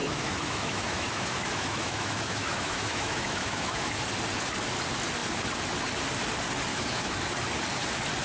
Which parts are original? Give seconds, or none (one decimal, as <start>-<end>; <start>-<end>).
3.9-6.7; 7.2-8.2